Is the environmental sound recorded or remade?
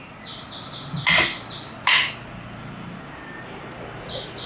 recorded